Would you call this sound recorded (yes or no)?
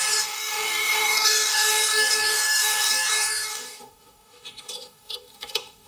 no